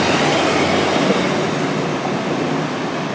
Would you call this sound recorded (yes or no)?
yes